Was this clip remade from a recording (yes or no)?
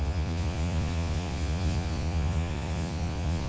yes